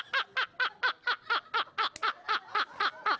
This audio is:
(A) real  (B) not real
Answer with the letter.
A